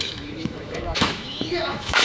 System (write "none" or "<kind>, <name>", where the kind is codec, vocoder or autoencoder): autoencoder, DAC-VAE